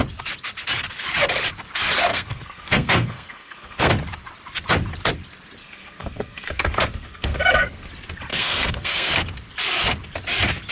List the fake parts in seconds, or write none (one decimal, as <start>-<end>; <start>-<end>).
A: 2.1-3.9; 5.6-7.9; 8.3-9.1